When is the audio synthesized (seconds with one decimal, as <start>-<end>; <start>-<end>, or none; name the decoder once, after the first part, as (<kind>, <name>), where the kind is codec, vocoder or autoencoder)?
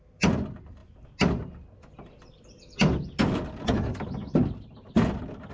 none